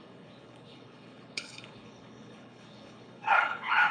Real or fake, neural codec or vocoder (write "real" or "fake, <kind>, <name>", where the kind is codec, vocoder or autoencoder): fake, codec, HILCodec